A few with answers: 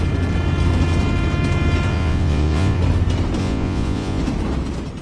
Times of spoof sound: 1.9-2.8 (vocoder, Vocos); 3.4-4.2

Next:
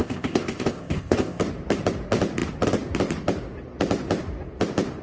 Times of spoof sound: 0.0-1.4 (codec, ZipCodec)

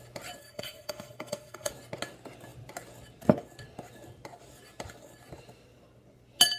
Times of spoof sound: 0.4-1.7 (codec, SNAC)

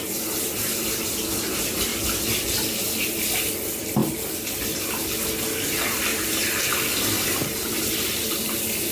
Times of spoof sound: none

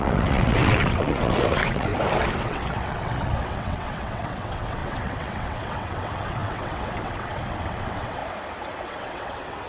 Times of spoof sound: 0.0-1.9 (vocoder, WaveNeXt); 2.4-8.2; 8.8-9.7

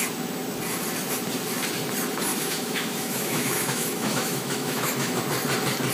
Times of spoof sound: 2.3-5.2 (autoencoder, DAC-VAE)